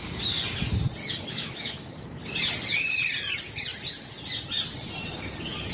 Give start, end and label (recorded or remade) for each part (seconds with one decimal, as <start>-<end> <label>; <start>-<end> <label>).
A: 0.0-1.0 recorded; 1.0-1.9 remade; 1.9-5.7 recorded